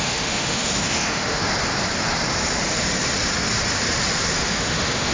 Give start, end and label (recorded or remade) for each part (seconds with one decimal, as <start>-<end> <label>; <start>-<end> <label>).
0.0-1.4 remade; 1.4-4.5 recorded; 4.5-5.1 remade